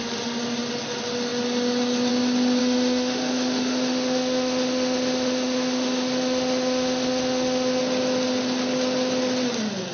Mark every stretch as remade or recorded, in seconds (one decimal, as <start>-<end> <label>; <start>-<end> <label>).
0.0-2.6 recorded; 2.6-7.8 remade; 7.8-9.9 recorded